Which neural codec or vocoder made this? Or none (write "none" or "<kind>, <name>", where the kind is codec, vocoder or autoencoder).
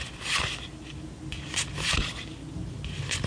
none